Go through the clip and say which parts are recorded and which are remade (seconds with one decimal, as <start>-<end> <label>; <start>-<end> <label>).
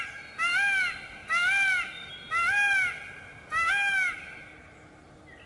0.0-5.5 recorded